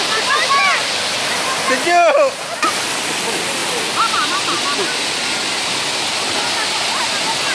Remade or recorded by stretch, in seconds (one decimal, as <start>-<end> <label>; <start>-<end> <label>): 0.0-7.5 recorded